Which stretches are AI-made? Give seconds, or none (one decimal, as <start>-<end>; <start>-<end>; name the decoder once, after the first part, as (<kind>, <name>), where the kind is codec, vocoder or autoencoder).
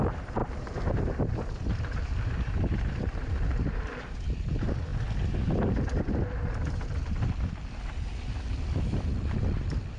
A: 0.0-0.4 (vocoder, BigVGAN v2); 1.0-4.9; 8.8-10.0